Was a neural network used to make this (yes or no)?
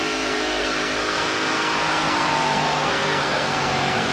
yes